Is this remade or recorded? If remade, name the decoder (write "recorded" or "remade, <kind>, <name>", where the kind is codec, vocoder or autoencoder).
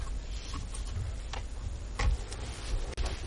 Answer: recorded